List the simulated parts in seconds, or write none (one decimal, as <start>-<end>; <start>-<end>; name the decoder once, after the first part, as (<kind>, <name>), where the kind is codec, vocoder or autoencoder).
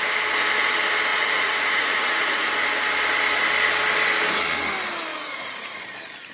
1.1-2.5 (vocoder, Vocos); 5.1-5.8